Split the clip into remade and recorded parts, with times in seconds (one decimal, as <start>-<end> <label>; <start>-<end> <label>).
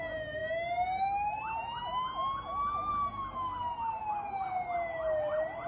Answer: 0.0-5.7 recorded